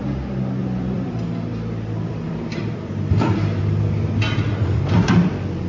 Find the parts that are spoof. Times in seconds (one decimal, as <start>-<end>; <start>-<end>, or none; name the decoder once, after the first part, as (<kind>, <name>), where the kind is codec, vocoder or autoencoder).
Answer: 0.6-1.1 (vocoder, BigVGAN v2); 1.5-3.6; 4.6-5.7